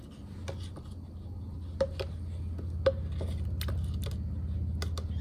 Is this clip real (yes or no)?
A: yes